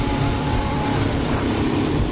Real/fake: fake